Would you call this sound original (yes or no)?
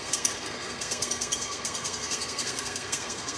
no